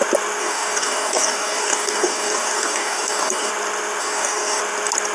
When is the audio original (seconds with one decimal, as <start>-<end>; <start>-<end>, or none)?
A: 0.0-0.4; 3.5-4.0; 4.6-5.1